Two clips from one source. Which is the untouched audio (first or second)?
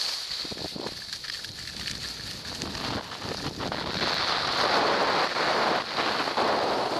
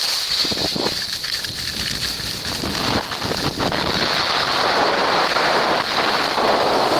first